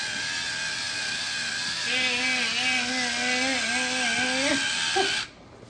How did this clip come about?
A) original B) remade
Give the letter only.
A